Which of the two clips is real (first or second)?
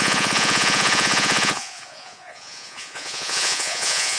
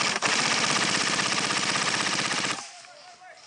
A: second